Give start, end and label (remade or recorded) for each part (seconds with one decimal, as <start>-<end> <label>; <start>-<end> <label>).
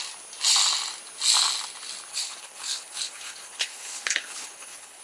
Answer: 0.0-2.1 recorded; 2.1-5.0 remade